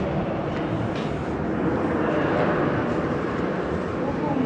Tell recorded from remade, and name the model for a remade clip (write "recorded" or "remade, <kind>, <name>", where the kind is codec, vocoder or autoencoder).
recorded